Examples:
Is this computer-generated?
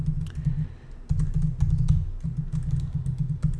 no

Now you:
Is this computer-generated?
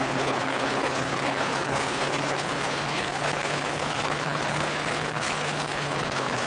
yes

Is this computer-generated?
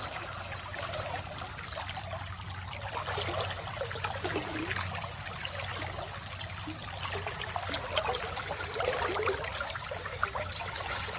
no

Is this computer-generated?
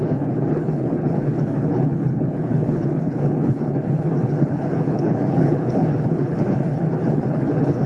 yes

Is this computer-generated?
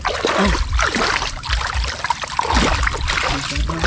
no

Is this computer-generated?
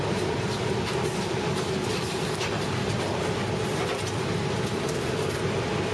no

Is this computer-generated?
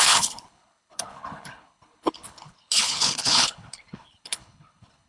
yes